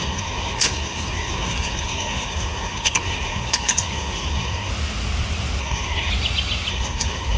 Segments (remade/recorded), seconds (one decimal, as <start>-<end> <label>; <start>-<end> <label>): 0.0-4.7 remade; 4.7-5.6 recorded; 5.6-6.1 remade; 6.1-6.7 recorded; 6.7-7.4 remade